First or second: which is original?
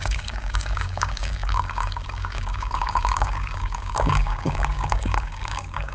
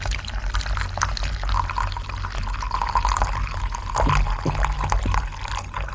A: second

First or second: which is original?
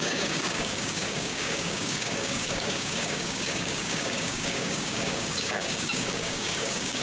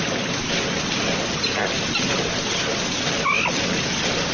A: second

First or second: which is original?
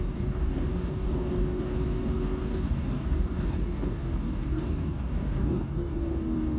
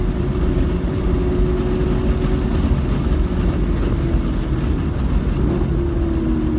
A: second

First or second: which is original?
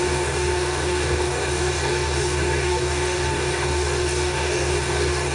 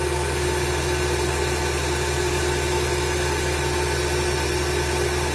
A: second